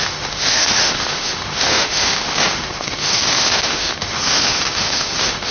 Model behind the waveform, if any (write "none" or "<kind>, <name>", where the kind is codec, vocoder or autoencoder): autoencoder, DAC-VAE